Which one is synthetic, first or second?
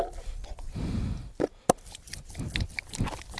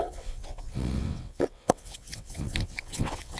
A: second